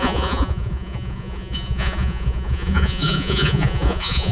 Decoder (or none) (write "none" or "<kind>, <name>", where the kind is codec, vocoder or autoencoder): vocoder, Vocos